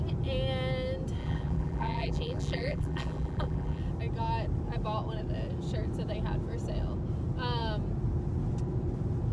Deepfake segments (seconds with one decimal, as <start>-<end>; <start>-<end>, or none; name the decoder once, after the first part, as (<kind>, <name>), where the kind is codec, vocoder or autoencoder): 1.2-3.8 (vocoder, BigVGAN v2)